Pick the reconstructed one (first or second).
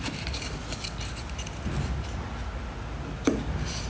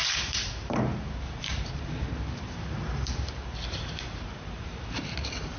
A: second